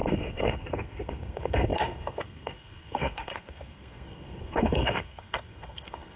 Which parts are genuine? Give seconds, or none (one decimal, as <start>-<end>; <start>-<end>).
none